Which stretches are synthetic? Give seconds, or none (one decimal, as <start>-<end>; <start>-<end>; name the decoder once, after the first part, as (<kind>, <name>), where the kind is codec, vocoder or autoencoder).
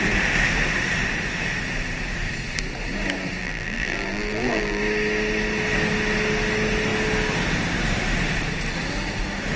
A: 3.4-4.8 (vocoder, BigVGAN v2)